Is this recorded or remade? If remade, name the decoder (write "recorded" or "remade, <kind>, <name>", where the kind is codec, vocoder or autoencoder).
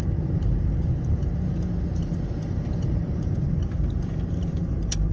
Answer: remade, vocoder, BigVGAN v2